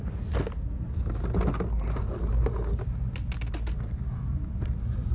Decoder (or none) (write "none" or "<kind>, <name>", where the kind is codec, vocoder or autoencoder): none